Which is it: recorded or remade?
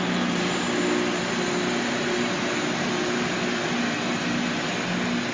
recorded